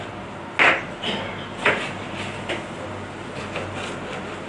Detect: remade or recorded recorded